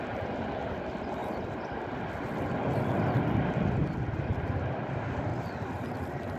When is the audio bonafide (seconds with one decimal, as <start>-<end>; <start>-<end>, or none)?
none